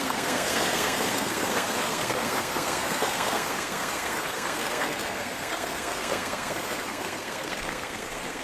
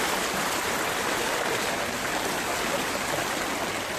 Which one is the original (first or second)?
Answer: second